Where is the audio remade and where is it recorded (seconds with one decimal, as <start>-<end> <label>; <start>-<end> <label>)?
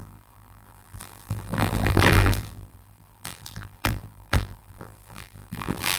0.0-6.0 remade